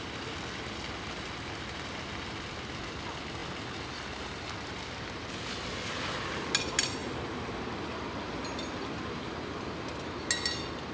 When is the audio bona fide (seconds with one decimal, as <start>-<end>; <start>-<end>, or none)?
0.0-10.9